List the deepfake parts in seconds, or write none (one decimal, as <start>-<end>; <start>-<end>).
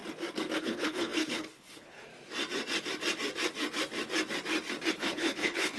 0.6-2.1; 4.9-5.8